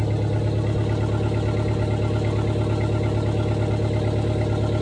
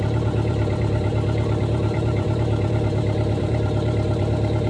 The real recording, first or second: first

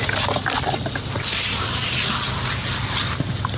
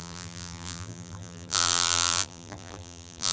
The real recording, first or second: first